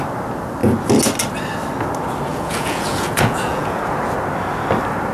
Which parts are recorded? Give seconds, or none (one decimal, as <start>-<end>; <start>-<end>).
0.0-2.3; 3.8-5.1